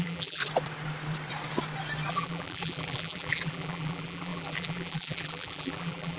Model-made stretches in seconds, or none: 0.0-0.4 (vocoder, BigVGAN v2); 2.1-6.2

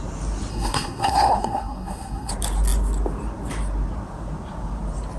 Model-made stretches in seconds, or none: 0.5-2.3 (codec, SNAC)

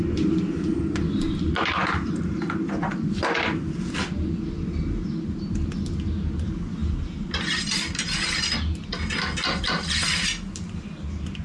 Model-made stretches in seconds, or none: 1.8-3.6 (vocoder, BigVGAN v2); 6.8-8.4